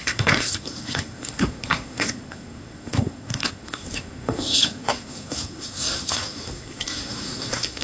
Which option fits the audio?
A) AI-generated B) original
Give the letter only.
A